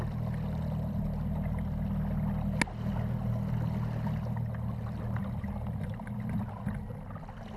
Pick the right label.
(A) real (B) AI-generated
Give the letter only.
A